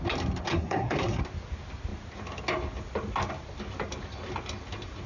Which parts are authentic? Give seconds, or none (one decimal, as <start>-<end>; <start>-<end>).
0.0-0.5; 1.2-5.1